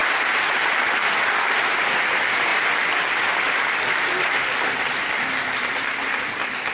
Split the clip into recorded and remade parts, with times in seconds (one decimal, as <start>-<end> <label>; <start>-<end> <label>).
0.0-6.7 recorded